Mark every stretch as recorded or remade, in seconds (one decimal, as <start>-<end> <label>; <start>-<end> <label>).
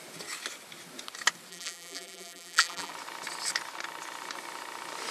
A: 0.0-1.5 recorded; 1.5-2.9 remade; 2.9-5.1 recorded